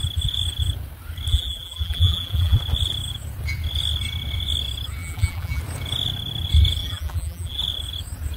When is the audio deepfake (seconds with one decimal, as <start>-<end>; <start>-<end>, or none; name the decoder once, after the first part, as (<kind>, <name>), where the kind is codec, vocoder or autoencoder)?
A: 1.3-2.6 (vocoder, BigVGAN v2); 5.0-5.6; 6.8-7.6